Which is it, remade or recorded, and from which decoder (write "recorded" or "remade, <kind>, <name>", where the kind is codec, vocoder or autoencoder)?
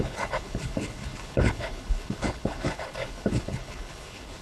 remade, codec, HILCodec